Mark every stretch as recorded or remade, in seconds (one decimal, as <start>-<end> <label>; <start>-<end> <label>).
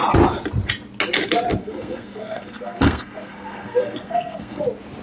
0.0-1.6 recorded; 1.6-4.6 remade; 4.6-5.0 recorded